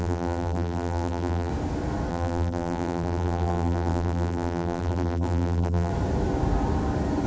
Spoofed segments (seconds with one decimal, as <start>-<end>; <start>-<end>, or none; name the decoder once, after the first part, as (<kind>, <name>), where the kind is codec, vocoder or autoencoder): 0.0-1.5 (vocoder, BigVGAN v2); 2.1-5.9